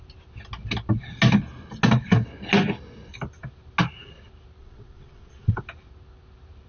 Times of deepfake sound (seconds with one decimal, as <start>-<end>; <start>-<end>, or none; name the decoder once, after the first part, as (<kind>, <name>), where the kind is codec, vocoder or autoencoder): 4.6-5.6 (vocoder, WaveNeXt)

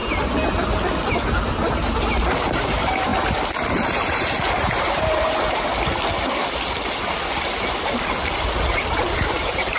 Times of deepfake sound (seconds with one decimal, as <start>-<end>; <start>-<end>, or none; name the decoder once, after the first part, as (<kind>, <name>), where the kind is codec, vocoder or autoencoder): 2.3-3.1 (vocoder, BigVGAN v2); 3.7-5.7; 9.0-9.8

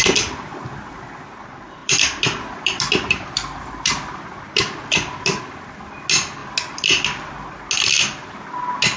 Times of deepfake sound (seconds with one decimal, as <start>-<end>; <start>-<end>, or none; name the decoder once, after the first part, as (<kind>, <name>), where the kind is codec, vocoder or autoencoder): 1.8-5.4 (vocoder, BigVGAN v2)